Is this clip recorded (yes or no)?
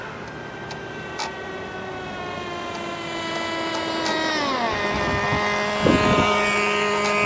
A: yes